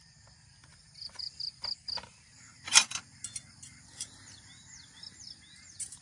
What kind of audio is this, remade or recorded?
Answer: recorded